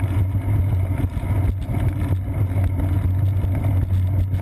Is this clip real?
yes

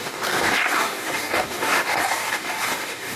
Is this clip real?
no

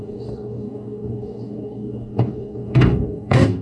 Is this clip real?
no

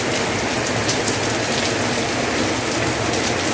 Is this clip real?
yes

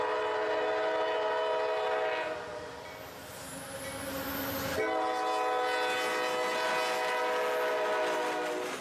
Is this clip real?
yes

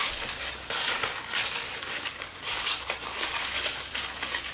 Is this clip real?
no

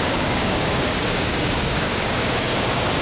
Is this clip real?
no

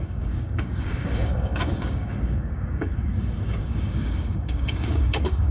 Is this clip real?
no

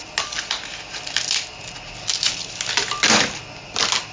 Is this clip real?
yes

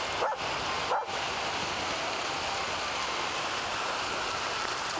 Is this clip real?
yes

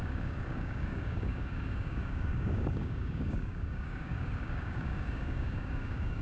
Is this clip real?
no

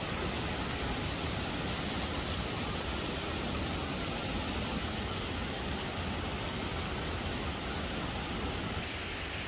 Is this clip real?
yes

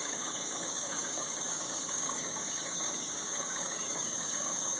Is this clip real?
no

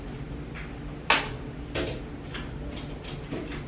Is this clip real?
yes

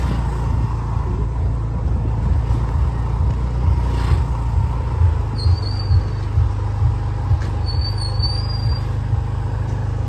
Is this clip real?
yes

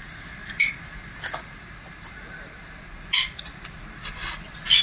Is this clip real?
yes